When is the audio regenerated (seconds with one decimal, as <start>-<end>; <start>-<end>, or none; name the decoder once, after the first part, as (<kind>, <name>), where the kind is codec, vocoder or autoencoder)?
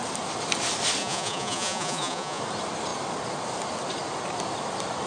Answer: 1.0-2.4 (vocoder, Vocos)